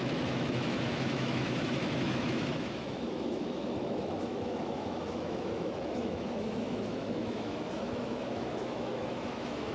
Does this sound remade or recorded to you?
remade